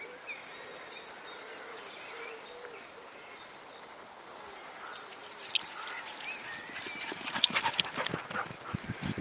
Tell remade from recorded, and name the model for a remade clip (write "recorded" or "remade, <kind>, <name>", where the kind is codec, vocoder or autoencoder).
recorded